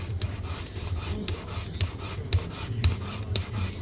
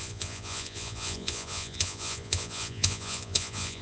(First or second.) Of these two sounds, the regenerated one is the second